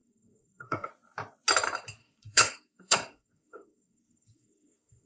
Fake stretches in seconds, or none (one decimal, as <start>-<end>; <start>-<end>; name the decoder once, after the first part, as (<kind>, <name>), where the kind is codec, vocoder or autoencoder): 0.0-0.9 (codec, SNAC); 2.0-5.1